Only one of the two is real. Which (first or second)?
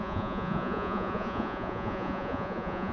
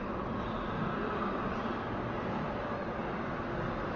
second